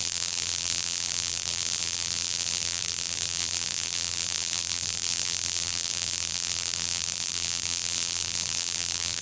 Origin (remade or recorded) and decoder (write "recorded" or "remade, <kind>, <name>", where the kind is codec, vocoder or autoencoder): remade, vocoder, BigVGAN v2